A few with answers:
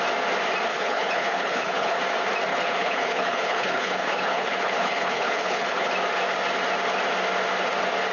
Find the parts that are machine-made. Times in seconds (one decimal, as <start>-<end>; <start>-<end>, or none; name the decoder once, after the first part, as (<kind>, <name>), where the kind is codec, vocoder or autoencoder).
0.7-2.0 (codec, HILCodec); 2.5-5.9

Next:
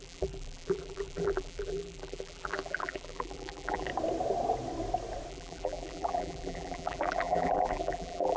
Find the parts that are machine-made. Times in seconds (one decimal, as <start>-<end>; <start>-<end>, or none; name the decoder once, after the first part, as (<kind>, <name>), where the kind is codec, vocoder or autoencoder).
0.0-3.9 (vocoder, BigVGAN v2); 5.3-8.4

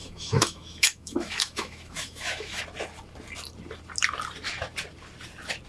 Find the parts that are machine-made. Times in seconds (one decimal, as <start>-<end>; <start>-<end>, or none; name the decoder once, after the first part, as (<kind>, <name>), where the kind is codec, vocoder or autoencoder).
0.0-2.6 (autoencoder, DAC-VAE)